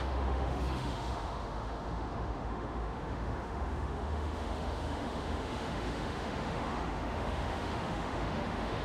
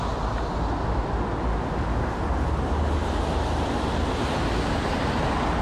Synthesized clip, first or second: first